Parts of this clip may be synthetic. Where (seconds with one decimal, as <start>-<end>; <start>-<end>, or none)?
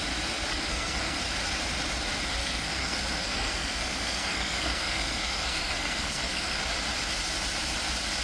0.5-1.2; 2.4-6.6